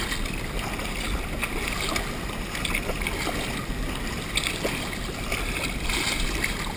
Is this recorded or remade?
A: recorded